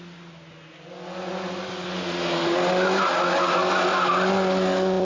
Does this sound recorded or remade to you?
recorded